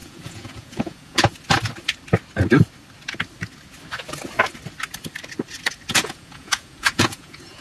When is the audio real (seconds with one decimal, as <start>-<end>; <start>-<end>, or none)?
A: 1.3-5.9